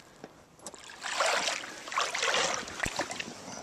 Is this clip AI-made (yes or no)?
no